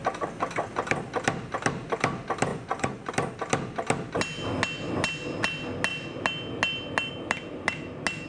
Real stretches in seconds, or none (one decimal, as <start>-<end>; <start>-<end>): 0.0-2.5; 3.1-8.3